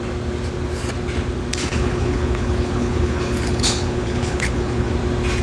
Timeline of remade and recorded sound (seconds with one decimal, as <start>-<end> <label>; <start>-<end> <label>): 0.0-1.7 recorded; 1.7-4.9 remade; 4.9-5.4 recorded